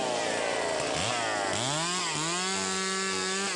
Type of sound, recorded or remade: recorded